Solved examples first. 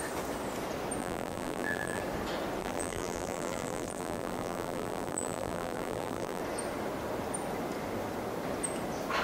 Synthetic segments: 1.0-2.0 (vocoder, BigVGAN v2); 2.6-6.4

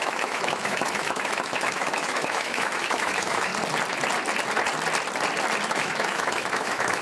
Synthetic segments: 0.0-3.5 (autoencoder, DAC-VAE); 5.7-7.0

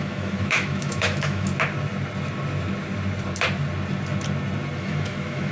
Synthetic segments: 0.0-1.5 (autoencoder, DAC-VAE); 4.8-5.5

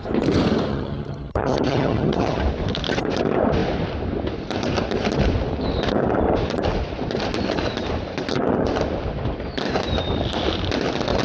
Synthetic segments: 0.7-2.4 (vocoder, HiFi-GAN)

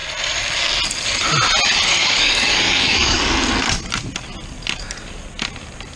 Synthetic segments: 2.0-3.2 (codec, DAC)